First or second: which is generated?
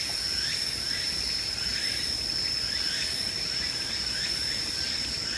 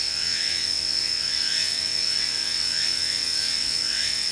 second